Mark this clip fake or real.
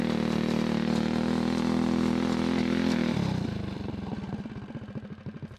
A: real